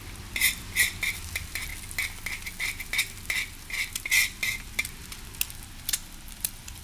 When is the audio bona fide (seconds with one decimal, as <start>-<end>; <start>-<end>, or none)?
1.7-5.8

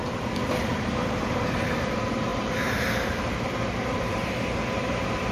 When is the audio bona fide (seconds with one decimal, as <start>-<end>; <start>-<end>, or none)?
0.0-0.7